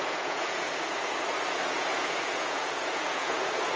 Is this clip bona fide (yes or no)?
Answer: no